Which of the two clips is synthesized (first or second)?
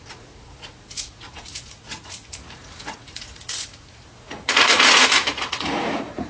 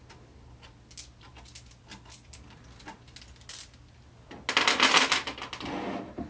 first